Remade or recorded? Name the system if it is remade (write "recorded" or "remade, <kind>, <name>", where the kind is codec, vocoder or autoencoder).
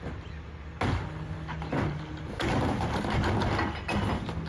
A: recorded